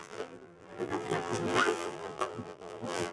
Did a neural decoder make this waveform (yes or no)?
yes